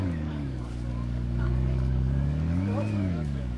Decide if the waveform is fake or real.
fake